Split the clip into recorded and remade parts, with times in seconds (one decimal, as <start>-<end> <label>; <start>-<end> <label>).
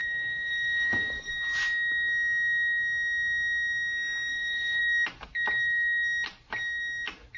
0.0-1.3 remade; 1.3-4.3 recorded; 4.3-4.8 remade; 4.8-7.4 recorded